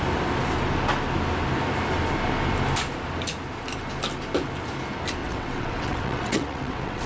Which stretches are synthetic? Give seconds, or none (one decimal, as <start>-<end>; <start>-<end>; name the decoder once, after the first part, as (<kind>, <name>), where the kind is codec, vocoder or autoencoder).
5.2-7.1 (vocoder, WaveNeXt)